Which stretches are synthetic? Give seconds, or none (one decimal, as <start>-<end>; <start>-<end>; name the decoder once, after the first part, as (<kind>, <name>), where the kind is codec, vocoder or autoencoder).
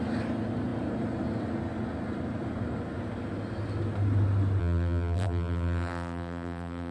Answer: 4.6-6.9 (vocoder, BigVGAN v2)